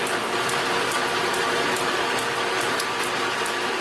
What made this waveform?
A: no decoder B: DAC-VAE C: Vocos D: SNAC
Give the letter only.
A